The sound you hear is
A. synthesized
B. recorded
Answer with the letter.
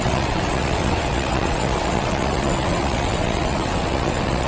A